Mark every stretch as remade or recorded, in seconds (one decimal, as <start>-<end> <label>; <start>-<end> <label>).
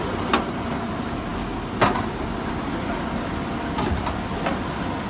0.0-5.1 recorded